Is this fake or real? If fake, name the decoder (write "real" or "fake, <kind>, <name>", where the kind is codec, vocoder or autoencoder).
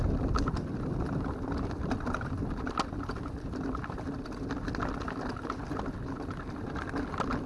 real